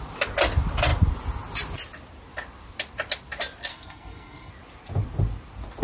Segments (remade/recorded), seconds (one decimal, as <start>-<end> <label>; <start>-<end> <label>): 0.0-3.7 recorded; 3.7-4.5 remade; 4.5-5.8 recorded